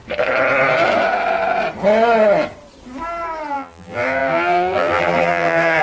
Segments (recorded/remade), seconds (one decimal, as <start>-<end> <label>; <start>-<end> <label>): 0.0-3.5 recorded; 3.5-5.8 remade